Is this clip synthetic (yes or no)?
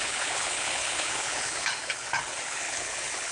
yes